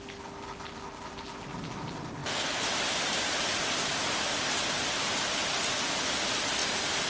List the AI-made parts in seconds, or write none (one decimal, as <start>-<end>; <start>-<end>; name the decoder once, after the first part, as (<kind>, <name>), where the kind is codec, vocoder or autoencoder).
none